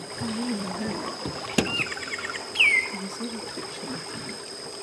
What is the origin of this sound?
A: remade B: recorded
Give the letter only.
A